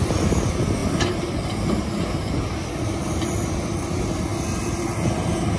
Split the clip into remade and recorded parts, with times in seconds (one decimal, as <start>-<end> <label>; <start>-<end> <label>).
0.0-5.6 recorded

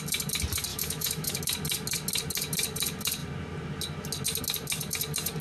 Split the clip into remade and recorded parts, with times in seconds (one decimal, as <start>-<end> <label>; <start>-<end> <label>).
0.0-0.7 recorded; 0.7-1.4 remade; 1.4-5.4 recorded

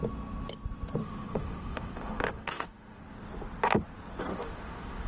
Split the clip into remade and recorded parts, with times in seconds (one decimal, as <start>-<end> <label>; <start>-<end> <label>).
0.0-1.0 recorded; 1.0-3.0 remade; 3.0-4.3 recorded; 4.3-5.1 remade

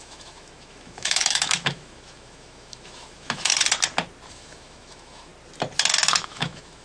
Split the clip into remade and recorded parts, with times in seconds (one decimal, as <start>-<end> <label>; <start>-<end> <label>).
0.0-3.5 remade; 3.5-4.3 recorded; 4.3-5.3 remade; 5.3-6.2 recorded; 6.2-6.8 remade

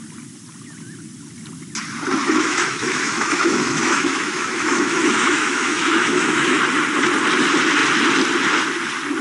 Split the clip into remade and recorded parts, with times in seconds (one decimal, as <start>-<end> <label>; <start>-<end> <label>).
0.0-2.2 recorded; 2.2-6.6 remade; 6.6-9.2 recorded

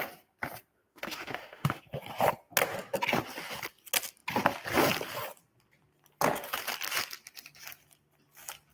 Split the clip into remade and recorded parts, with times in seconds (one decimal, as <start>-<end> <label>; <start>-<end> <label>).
0.0-0.9 recorded; 0.9-1.8 remade; 1.8-8.7 recorded